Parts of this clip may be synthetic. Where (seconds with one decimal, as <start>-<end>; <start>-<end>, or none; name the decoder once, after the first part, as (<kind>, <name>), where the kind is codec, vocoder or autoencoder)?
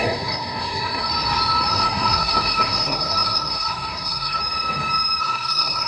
0.0-1.1 (codec, SNAC); 1.7-4.4; 5.2-5.9